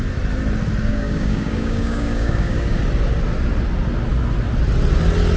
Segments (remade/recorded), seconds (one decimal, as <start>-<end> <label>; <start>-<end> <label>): 0.0-0.9 recorded; 0.9-2.8 remade; 2.8-5.4 recorded